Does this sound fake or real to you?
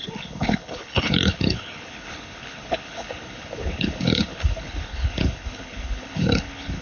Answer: fake